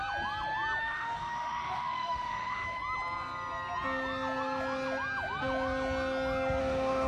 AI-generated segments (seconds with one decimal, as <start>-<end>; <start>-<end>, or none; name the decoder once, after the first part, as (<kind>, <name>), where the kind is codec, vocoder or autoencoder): 0.8-2.8 (autoencoder, DAC-VAE); 6.6-7.1